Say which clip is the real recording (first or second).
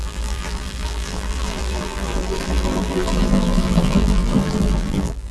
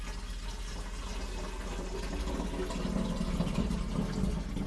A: second